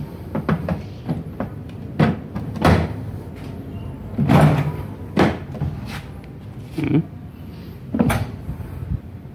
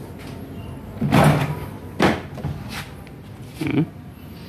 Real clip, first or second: second